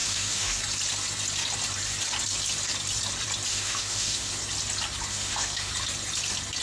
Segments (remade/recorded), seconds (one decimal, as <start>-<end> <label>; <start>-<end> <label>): 0.0-0.6 remade; 0.6-3.5 recorded; 3.5-4.3 remade; 4.3-5.1 recorded; 5.1-5.7 remade; 5.7-6.6 recorded